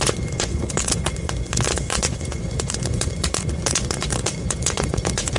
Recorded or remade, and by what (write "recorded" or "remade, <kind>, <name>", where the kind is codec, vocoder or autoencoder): remade, vocoder, Vocos